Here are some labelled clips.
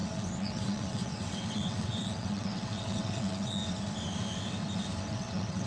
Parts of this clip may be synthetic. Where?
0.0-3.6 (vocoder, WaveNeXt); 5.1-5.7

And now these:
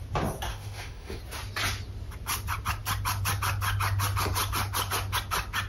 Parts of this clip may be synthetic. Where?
0.5-1.2 (autoencoder, DAC-VAE)

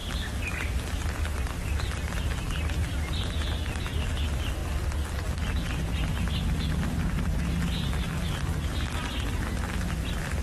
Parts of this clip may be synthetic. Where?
none

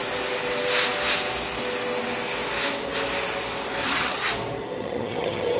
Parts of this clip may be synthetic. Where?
3.8-4.3 (vocoder, HiFi-GAN); 4.8-5.6

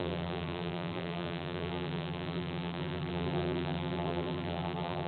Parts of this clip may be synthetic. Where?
0.0-5.1 (vocoder, BigVGAN v2)

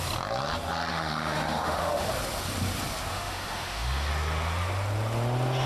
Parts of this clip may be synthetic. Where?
0.9-2.1 (autoencoder, DAC-VAE); 3.1-4.1

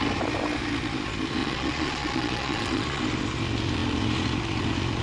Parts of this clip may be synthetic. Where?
1.4-3.0 (vocoder, Vocos)